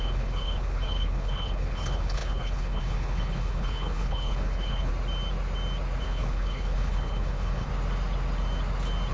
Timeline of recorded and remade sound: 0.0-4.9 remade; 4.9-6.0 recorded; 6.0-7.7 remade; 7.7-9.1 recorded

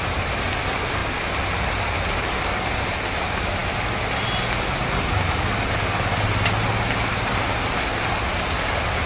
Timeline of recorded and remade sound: 0.0-9.1 recorded

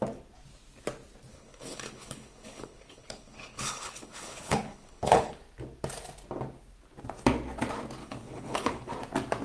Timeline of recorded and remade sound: 0.0-1.3 recorded; 1.3-5.4 remade; 5.4-8.0 recorded; 8.0-8.9 remade; 8.9-9.4 recorded

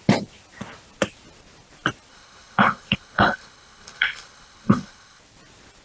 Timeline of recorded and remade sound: 0.0-2.1 recorded; 2.1-5.2 remade; 5.2-5.8 recorded

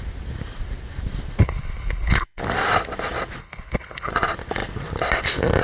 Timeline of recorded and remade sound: 0.0-1.4 recorded; 1.4-2.4 remade; 2.4-3.4 recorded; 3.4-4.1 remade; 4.1-5.6 recorded

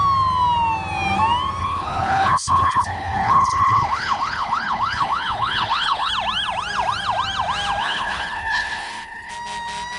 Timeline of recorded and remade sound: 0.0-1.6 recorded; 1.6-6.1 remade; 6.1-7.8 recorded; 7.8-9.3 remade; 9.3-10.0 recorded

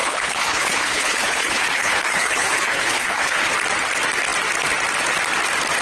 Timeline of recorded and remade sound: 0.0-3.5 remade; 3.5-5.8 recorded

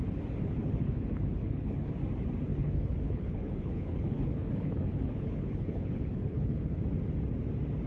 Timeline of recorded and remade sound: 0.0-0.6 recorded; 0.6-1.9 remade; 1.9-2.5 recorded; 2.5-6.8 remade; 6.8-7.9 recorded